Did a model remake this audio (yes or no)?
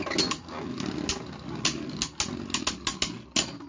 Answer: no